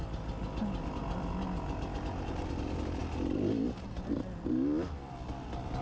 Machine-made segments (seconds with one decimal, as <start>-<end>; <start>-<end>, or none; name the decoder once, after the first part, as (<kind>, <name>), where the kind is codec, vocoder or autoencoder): none